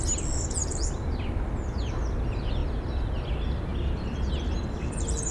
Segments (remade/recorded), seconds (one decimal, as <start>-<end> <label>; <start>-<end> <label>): 0.0-5.3 recorded